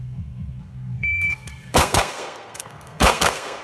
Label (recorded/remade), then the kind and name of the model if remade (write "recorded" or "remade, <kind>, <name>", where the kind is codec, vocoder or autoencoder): remade, codec, SNAC